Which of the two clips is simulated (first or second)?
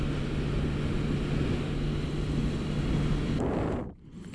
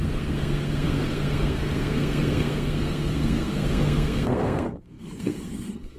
second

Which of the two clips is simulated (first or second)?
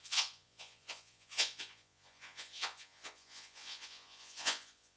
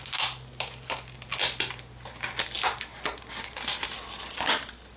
first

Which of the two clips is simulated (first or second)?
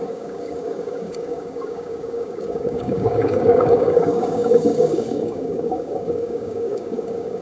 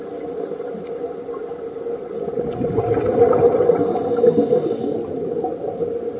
first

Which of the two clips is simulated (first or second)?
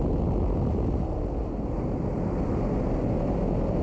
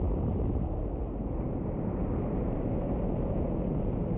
second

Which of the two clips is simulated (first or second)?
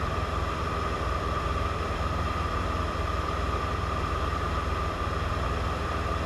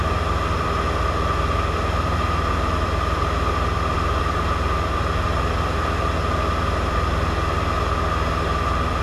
first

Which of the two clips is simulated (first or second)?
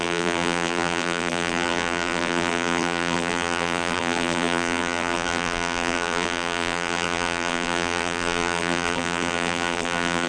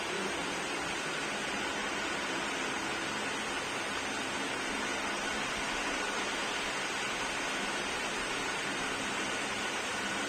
first